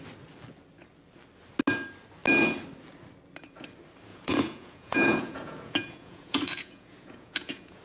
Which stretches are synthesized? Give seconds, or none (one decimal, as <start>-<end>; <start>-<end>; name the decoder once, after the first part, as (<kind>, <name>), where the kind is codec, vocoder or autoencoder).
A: 4.1-7.8 (vocoder, Vocos)